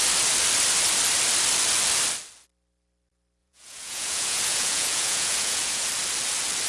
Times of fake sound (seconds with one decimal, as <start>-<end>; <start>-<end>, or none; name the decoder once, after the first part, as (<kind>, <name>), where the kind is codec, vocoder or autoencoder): 3.4-5.8 (vocoder, Vocos)